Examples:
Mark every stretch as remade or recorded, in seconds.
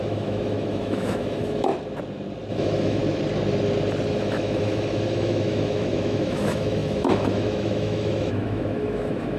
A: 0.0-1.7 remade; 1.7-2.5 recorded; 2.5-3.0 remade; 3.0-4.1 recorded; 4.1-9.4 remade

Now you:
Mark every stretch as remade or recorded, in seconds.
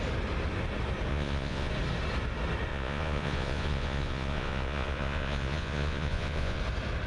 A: 0.0-1.1 recorded; 1.1-1.7 remade; 1.7-2.7 recorded; 2.7-6.6 remade; 6.6-7.1 recorded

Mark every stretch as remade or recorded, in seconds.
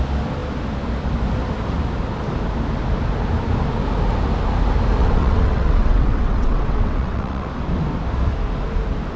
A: 0.0-5.0 recorded; 5.0-7.5 remade; 7.5-9.2 recorded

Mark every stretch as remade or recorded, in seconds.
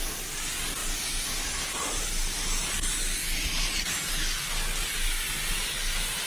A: 0.0-6.3 recorded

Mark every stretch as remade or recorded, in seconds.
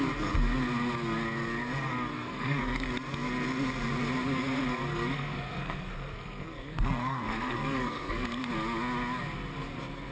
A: 0.0-2.1 recorded; 2.1-2.9 remade; 2.9-4.9 recorded; 4.9-8.5 remade; 8.5-10.1 recorded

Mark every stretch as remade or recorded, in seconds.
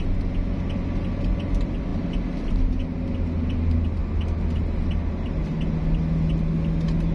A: 0.0-7.1 recorded